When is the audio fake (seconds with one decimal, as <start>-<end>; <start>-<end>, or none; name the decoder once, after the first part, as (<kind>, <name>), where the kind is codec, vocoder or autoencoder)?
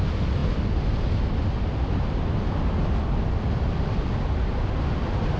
none